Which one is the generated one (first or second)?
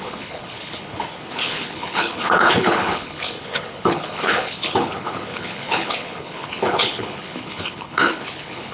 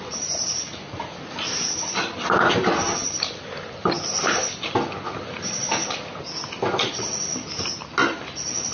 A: first